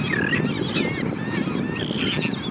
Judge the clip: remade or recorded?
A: recorded